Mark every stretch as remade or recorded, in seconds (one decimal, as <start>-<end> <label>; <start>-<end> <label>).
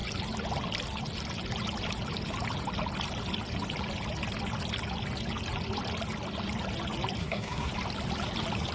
0.0-7.2 recorded; 7.2-7.7 remade; 7.7-8.7 recorded